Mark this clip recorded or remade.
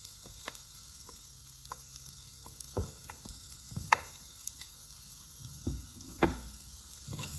remade